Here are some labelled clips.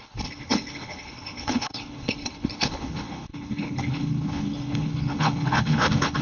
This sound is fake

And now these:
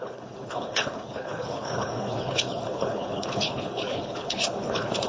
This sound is fake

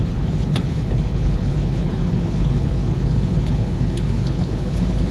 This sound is fake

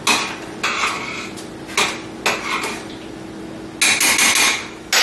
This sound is real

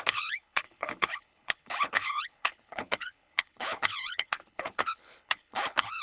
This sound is fake